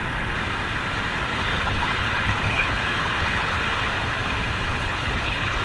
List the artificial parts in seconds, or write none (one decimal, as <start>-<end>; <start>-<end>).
1.3-3.6; 4.7-5.6